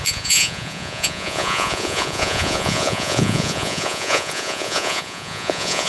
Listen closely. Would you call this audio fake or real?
fake